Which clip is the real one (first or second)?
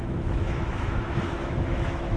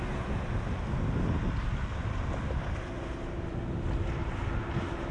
second